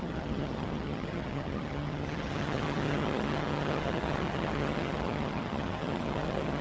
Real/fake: fake